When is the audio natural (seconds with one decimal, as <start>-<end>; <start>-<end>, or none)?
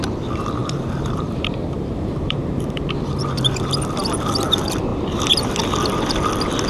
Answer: 0.0-0.6; 3.7-6.7